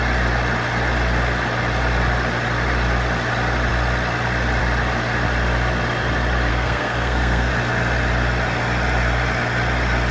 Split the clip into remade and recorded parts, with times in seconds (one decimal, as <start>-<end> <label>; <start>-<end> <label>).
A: 0.0-6.5 recorded; 6.5-7.5 remade; 7.5-10.1 recorded